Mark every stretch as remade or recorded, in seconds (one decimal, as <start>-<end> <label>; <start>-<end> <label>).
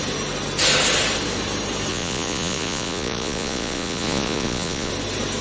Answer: 0.0-1.9 recorded; 1.9-4.9 remade; 4.9-5.4 recorded